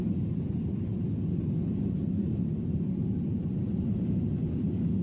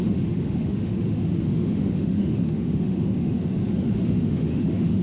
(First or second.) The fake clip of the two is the second